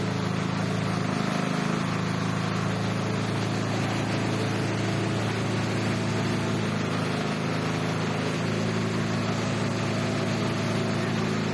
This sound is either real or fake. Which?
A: real